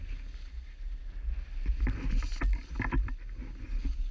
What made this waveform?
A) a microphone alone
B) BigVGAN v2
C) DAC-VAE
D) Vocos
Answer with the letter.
A